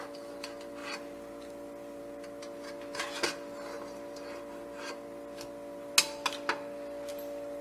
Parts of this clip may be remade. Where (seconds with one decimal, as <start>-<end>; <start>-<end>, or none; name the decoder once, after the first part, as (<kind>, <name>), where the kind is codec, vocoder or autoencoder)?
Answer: 0.8-2.0 (vocoder, BigVGAN v2); 7.1-7.6